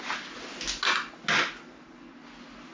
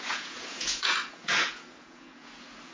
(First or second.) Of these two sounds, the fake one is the second